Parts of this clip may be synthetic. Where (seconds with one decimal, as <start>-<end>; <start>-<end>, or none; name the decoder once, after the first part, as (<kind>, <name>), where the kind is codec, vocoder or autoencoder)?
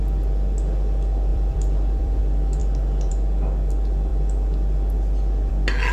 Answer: 1.3-2.2 (vocoder, BigVGAN v2)